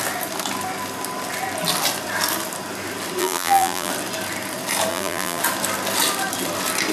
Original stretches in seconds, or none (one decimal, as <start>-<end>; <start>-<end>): 0.0-3.2; 3.9-4.9; 5.4-6.9